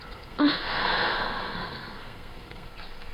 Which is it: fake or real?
fake